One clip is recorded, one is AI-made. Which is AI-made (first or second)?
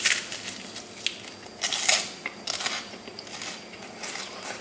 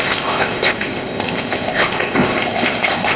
second